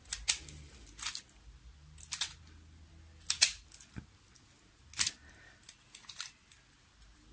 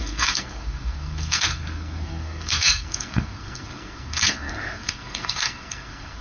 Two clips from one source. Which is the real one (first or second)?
first